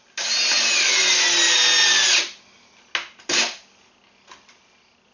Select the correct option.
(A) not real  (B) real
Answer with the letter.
B